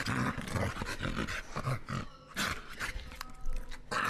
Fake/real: real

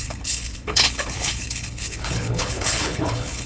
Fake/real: fake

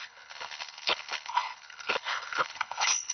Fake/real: fake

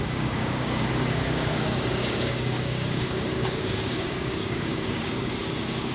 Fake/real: fake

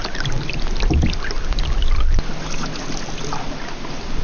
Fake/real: real